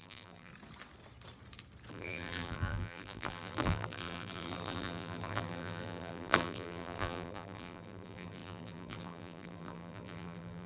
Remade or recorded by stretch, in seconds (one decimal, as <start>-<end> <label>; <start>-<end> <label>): 0.0-0.5 remade; 0.5-1.9 recorded; 1.9-10.7 remade